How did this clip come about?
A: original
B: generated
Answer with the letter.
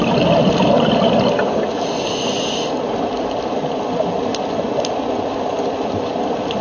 A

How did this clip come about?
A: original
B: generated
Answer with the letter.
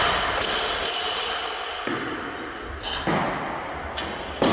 A